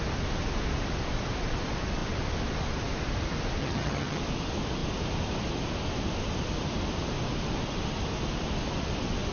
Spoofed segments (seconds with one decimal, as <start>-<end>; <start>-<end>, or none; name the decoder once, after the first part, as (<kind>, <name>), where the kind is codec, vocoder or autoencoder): 3.6-4.2 (vocoder, HiFi-GAN)